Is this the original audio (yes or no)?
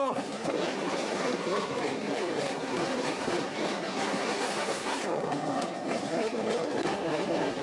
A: no